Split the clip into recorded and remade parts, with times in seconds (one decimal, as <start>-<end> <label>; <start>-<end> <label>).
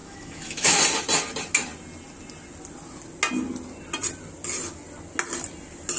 0.0-0.8 remade; 0.8-6.0 recorded